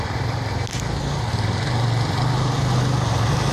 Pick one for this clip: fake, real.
real